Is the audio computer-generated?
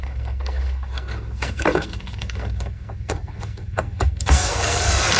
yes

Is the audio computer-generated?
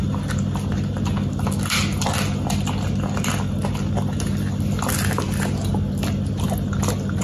no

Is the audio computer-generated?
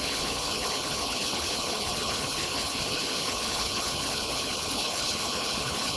yes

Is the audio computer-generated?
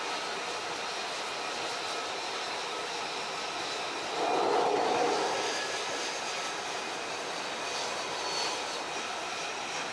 no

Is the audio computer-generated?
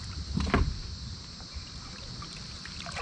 yes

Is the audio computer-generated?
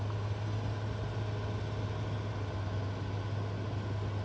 no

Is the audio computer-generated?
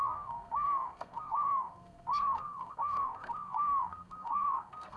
yes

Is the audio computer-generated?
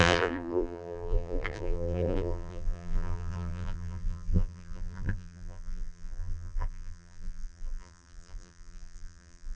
yes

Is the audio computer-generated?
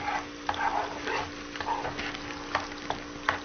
no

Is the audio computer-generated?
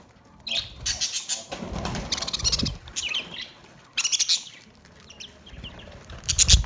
no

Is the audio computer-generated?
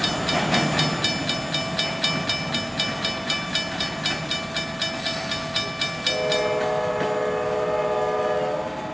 no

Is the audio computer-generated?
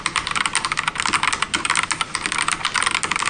no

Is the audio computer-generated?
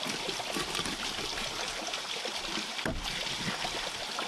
no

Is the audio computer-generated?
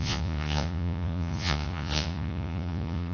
yes